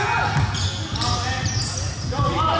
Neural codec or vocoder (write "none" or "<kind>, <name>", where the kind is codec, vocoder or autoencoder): none